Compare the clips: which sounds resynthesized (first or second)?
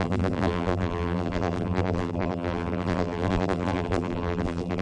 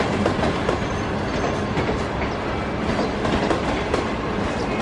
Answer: first